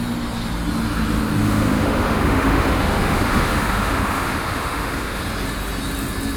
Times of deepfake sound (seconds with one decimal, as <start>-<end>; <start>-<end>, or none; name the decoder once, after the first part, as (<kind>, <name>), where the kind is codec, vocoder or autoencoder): 1.4-5.2 (autoencoder, DAC-VAE)